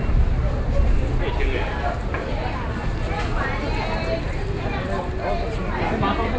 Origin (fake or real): real